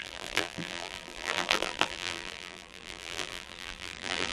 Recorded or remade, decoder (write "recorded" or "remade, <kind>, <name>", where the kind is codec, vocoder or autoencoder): remade, vocoder, BigVGAN v2